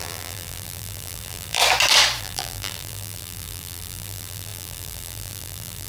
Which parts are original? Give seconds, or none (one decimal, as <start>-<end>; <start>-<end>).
1.6-2.2

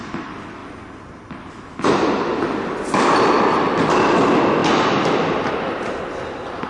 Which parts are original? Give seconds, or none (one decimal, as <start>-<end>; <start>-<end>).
0.0-6.7

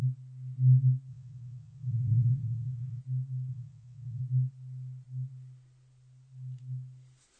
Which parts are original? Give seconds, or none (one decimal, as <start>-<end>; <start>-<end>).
0.0-1.1; 3.0-3.5; 4.2-7.4

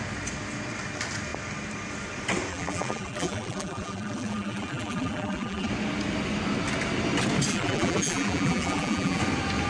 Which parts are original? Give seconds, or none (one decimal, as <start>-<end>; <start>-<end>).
0.0-2.5; 5.7-7.5; 9.2-9.7